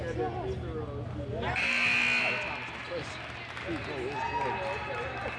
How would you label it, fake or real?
real